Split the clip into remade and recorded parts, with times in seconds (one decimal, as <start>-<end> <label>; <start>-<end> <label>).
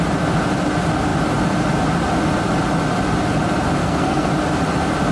0.0-3.8 recorded; 3.8-4.3 remade; 4.3-5.1 recorded